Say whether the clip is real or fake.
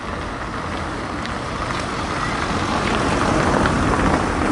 real